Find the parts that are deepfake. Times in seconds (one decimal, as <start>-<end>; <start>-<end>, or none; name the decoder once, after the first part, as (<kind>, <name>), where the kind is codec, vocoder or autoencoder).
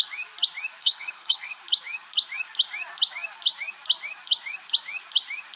0.8-1.6 (codec, SNAC)